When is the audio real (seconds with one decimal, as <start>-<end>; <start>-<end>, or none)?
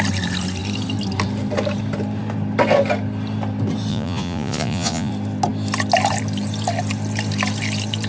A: 0.0-3.9; 5.1-8.1